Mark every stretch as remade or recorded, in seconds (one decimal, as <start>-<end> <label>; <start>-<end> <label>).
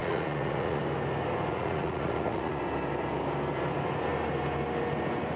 0.0-0.8 remade; 0.8-1.5 recorded; 1.5-2.6 remade; 2.6-5.4 recorded